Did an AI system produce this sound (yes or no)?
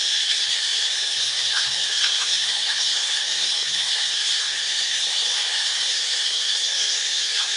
yes